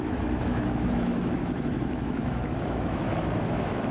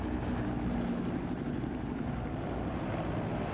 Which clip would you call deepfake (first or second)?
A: first